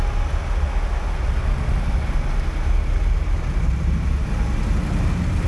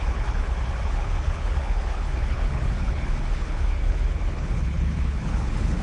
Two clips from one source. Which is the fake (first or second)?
second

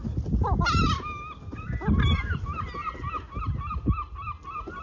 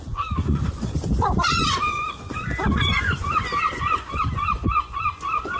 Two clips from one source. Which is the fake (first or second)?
second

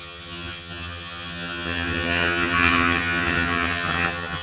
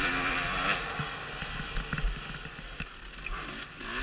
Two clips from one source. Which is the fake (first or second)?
first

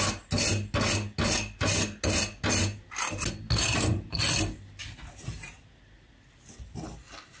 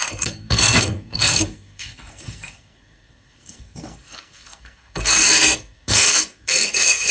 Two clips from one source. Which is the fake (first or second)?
second